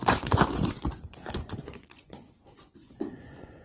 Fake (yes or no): yes